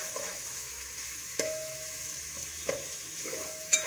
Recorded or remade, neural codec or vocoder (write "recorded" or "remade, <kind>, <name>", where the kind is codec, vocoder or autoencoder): remade, autoencoder, DAC-VAE